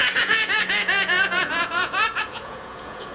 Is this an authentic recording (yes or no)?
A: no